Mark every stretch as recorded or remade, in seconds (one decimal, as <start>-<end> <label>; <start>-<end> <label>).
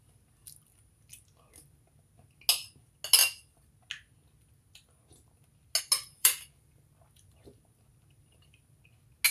0.0-6.2 recorded; 6.2-6.9 remade; 6.9-9.3 recorded